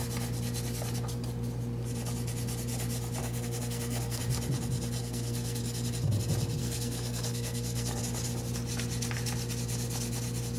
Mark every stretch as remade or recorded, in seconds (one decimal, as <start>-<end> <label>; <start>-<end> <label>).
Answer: 0.0-3.2 recorded; 3.2-4.2 remade; 4.2-5.0 recorded; 5.0-5.6 remade; 5.6-6.6 recorded; 6.6-8.0 remade; 8.0-10.6 recorded